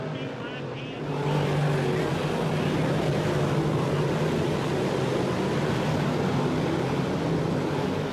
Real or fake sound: real